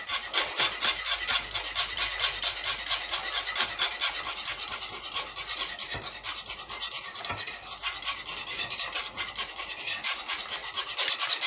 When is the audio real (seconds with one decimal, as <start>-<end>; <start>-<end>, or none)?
0.0-11.5